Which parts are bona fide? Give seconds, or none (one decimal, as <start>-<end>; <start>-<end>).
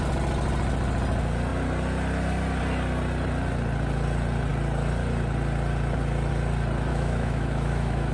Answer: 0.0-6.9